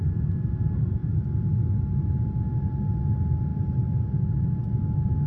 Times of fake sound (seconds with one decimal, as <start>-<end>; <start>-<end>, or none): none